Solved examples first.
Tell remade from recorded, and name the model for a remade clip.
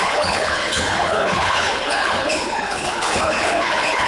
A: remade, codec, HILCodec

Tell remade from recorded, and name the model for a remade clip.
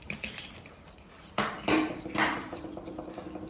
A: remade, vocoder, BigVGAN v2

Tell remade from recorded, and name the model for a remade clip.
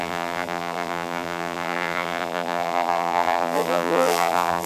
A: remade, vocoder, BigVGAN v2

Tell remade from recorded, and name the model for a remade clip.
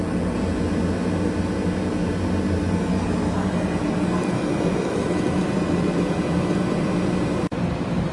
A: recorded